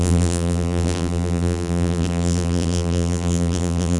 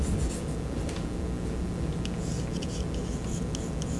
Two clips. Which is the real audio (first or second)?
second